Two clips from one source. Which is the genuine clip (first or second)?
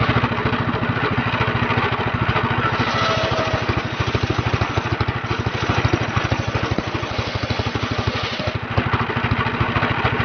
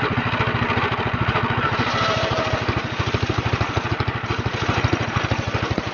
first